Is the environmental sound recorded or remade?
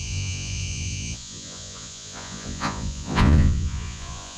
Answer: remade